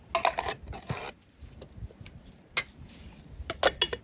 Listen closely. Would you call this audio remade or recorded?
recorded